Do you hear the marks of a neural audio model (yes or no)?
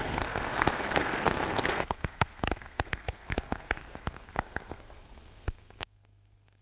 yes